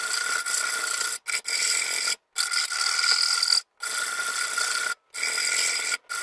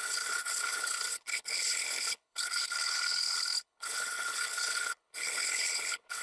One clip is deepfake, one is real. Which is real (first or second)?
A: first